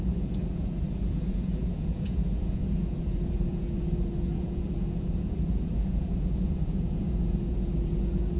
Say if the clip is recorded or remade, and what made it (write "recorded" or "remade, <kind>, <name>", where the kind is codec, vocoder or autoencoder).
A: remade, vocoder, Vocos